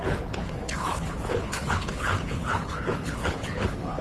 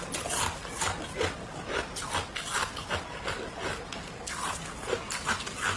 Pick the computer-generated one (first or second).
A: first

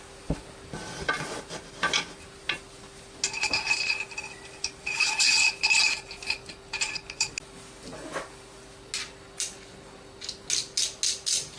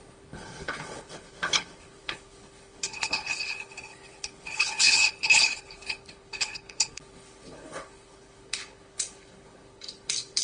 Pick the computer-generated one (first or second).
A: second